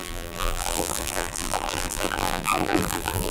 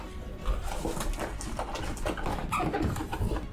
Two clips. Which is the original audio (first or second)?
second